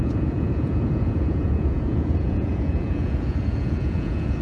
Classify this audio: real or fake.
fake